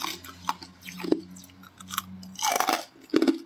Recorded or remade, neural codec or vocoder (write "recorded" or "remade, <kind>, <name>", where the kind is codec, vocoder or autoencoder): recorded